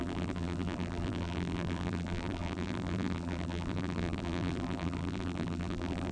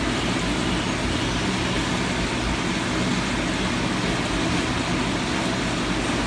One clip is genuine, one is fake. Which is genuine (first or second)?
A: second